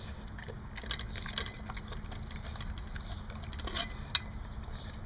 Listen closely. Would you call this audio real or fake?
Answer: real